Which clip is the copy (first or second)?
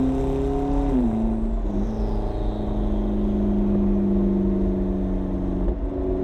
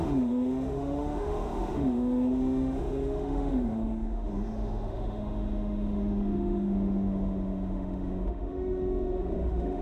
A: second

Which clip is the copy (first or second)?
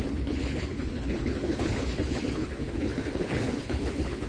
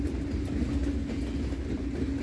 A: first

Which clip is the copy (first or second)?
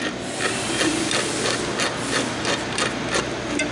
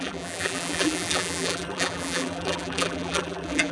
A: second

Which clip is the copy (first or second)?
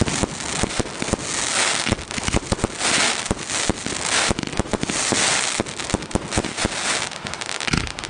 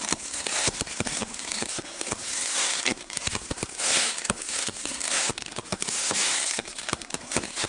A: second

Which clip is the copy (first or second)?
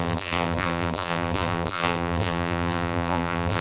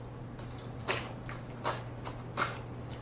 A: first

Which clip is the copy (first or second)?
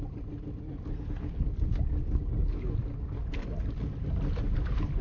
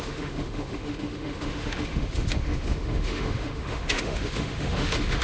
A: second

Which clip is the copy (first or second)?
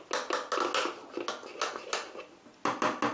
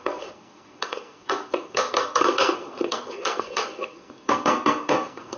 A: second